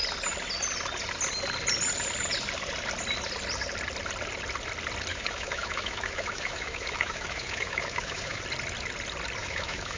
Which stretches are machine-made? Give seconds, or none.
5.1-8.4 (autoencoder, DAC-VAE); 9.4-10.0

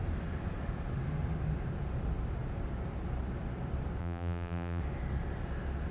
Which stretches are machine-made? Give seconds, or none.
4.0-4.8 (vocoder, BigVGAN v2)

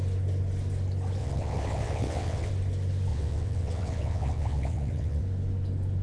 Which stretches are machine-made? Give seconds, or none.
1.2-2.5 (vocoder, WaveNeXt); 3.1-5.2

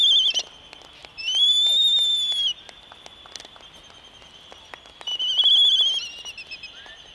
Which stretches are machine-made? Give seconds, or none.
none

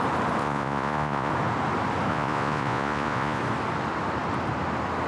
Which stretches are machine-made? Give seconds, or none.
0.4-1.3 (vocoder, Vocos); 2.1-3.4

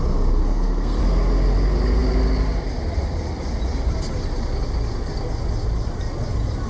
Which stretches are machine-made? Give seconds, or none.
0.4-1.0 (codec, SNAC)

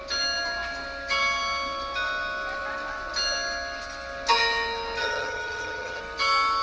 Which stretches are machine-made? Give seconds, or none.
5.0-6.0 (vocoder, HiFi-GAN)